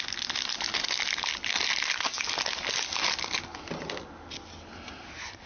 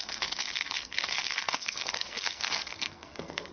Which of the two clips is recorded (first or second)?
first